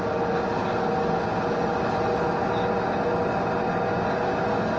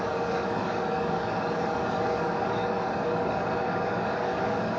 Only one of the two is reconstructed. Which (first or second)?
second